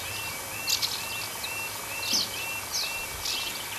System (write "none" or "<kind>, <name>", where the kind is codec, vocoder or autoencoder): none